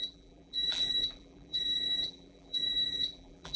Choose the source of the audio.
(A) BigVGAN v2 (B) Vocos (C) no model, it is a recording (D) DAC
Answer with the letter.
A